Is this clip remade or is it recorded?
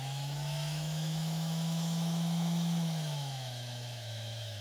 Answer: remade